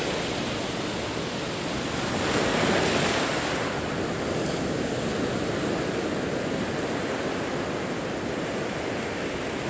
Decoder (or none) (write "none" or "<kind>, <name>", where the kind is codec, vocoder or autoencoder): none